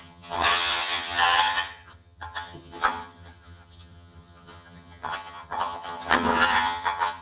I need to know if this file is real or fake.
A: fake